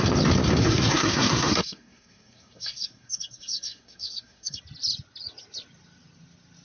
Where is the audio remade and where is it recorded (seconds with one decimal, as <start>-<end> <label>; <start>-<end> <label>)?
0.0-0.6 recorded; 0.6-4.6 remade; 4.6-6.6 recorded